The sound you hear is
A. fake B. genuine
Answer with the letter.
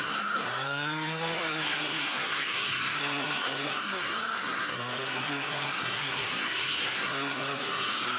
A